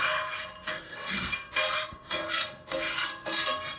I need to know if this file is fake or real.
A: fake